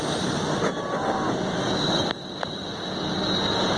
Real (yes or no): yes